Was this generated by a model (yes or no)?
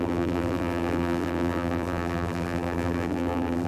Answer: yes